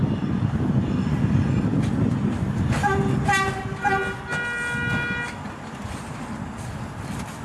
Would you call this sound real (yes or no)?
yes